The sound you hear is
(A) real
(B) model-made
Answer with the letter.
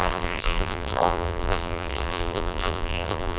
B